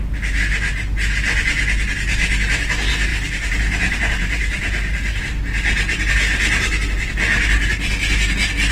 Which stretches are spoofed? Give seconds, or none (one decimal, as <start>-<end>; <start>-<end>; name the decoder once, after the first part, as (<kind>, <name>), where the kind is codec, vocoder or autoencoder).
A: 3.1-5.2 (vocoder, BigVGAN v2)